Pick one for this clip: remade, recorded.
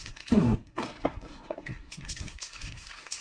remade